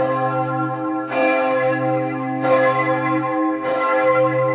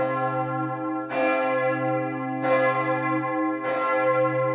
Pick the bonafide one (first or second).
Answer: second